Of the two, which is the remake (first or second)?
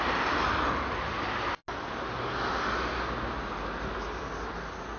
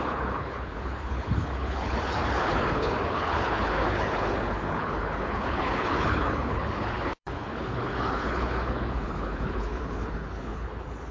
second